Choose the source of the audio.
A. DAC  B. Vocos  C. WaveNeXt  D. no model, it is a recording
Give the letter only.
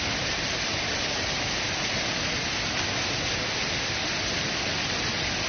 D